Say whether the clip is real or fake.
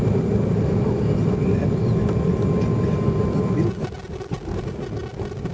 real